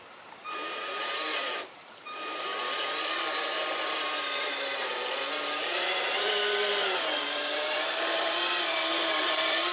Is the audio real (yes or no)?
no